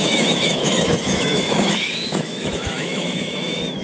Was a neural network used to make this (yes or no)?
yes